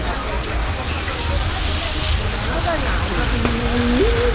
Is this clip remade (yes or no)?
no